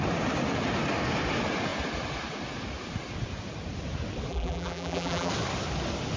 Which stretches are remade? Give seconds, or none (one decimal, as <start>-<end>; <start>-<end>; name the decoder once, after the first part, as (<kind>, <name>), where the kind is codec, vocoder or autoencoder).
4.3-5.3 (vocoder, BigVGAN v2)